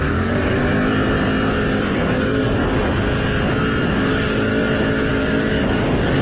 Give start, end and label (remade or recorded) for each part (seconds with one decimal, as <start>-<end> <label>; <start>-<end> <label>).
0.0-0.6 remade; 0.6-2.1 recorded; 2.1-2.6 remade; 2.6-3.9 recorded; 3.9-4.5 remade; 4.5-5.1 recorded; 5.1-6.2 remade